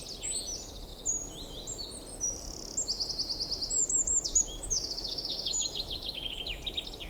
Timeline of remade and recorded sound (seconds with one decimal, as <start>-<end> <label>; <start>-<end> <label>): 0.0-3.8 recorded; 3.8-6.6 remade; 6.6-7.1 recorded